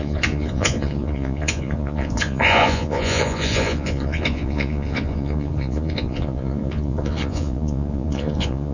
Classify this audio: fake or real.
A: fake